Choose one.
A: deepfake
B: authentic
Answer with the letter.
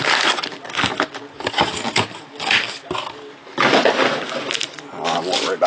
B